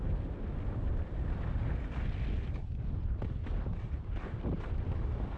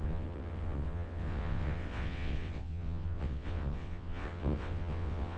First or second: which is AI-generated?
second